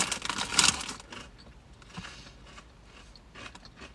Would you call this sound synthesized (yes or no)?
no